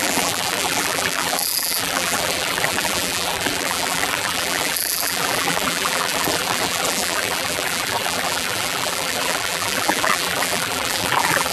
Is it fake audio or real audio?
fake